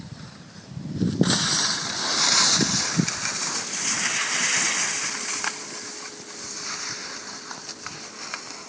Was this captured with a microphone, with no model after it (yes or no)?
yes